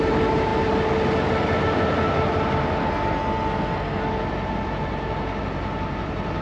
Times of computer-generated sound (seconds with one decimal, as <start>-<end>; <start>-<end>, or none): 2.8-4.0